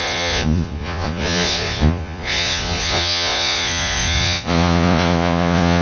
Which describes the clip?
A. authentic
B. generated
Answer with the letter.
B